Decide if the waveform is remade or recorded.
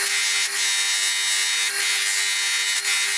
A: recorded